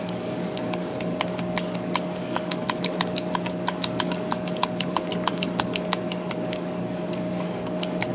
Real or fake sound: fake